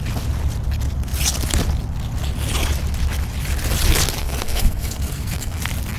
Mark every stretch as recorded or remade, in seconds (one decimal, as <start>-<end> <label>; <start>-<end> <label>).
0.0-4.2 recorded; 4.2-5.6 remade; 5.6-6.0 recorded